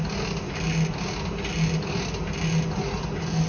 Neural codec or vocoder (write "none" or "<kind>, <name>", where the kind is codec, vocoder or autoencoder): none